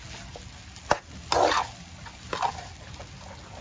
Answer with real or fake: real